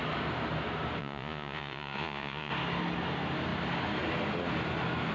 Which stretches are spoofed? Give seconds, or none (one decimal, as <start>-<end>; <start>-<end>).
1.0-2.5